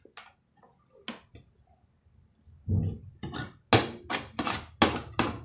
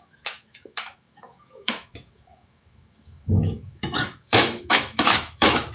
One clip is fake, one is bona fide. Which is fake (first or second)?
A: second